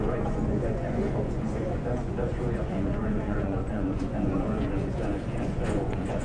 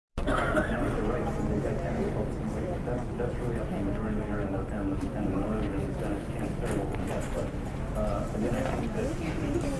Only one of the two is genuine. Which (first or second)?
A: second